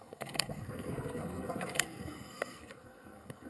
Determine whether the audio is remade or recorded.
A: remade